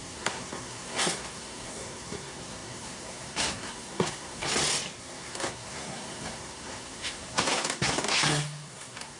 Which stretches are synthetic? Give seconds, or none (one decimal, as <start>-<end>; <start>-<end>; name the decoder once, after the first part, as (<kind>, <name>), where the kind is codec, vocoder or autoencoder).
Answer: 0.0-4.5 (codec, SNAC); 5.0-9.2